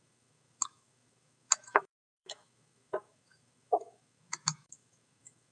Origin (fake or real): fake